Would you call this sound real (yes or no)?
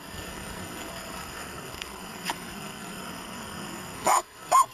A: no